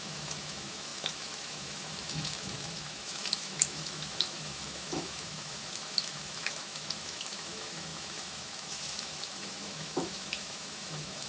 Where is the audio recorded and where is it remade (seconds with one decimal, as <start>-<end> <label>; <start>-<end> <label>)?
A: 0.0-11.3 remade